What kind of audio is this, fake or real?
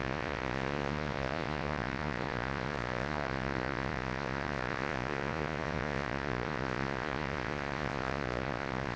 fake